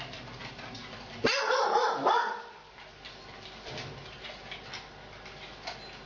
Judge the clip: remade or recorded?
recorded